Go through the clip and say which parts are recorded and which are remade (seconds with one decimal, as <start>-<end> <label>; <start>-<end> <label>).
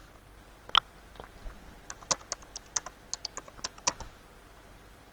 0.0-5.1 recorded